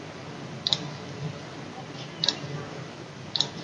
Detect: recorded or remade recorded